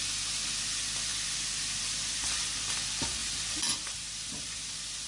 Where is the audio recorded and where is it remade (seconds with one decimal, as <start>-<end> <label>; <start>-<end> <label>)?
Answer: 0.0-3.2 recorded; 3.2-5.1 remade